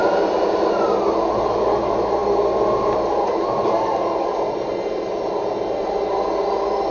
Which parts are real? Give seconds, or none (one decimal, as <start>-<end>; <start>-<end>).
0.0-6.9